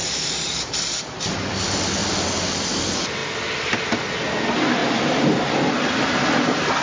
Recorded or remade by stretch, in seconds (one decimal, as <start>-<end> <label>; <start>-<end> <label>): 0.0-0.7 remade; 0.7-4.8 recorded; 4.8-5.4 remade; 5.4-6.8 recorded